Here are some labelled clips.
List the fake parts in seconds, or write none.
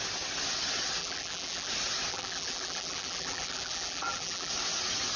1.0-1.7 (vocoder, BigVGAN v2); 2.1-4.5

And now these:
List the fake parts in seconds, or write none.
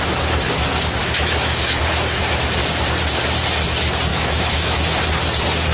1.0-2.2 (autoencoder, DAC-VAE); 4.1-5.0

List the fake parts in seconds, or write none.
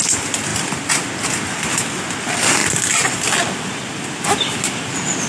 none